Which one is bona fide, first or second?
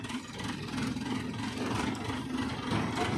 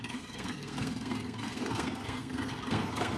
first